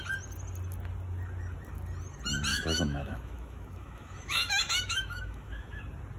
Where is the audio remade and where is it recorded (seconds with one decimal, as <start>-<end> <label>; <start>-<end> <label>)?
0.0-2.5 recorded; 2.5-5.8 remade; 5.8-6.2 recorded